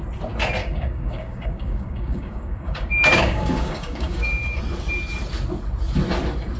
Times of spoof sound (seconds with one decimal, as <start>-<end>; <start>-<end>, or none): 0.6-4.6